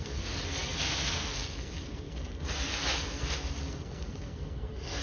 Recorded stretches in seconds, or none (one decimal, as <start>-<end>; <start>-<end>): none